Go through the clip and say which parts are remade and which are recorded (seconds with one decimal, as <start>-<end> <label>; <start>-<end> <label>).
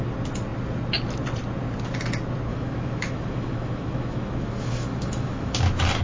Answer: 0.0-2.5 recorded; 2.5-5.6 remade; 5.6-6.0 recorded